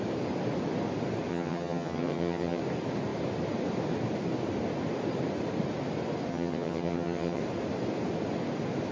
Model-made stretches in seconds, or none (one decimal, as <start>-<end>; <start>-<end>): 1.3-2.6; 6.3-7.4